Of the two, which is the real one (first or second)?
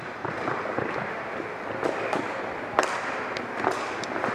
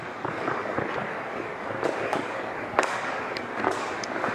first